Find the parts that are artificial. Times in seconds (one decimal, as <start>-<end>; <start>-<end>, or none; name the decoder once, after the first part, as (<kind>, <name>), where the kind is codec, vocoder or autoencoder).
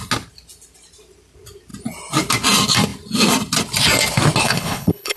4.4-5.2 (codec, HILCodec)